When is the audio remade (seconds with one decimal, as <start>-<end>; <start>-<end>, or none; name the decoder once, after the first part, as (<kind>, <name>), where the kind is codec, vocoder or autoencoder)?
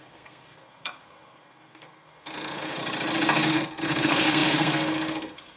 0.0-2.8 (codec, SNAC); 3.5-5.6